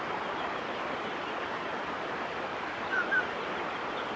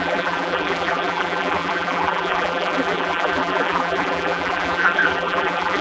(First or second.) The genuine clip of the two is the first